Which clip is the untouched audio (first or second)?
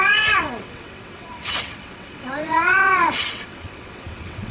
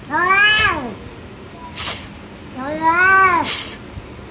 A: second